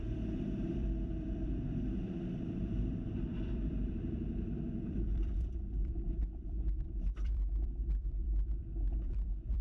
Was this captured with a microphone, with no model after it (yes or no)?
no